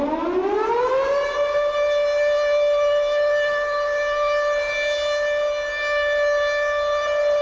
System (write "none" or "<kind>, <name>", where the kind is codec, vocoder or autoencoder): none